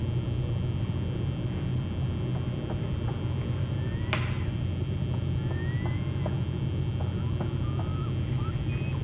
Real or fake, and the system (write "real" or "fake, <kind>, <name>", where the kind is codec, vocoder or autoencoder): real